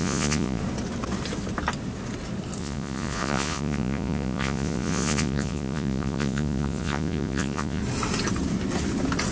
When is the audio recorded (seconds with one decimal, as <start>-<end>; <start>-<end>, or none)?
0.6-2.6; 7.8-9.3